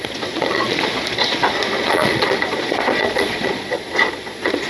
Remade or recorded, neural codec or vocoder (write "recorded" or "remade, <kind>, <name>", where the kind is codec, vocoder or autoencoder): remade, vocoder, Vocos